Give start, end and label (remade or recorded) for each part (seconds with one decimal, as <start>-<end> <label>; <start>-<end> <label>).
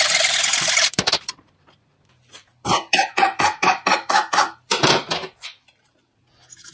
0.0-6.7 remade